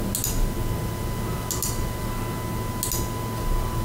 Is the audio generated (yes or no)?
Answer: no